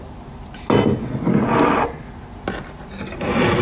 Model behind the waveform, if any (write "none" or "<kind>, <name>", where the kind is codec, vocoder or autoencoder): none